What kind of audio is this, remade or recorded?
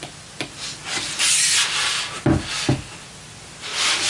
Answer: recorded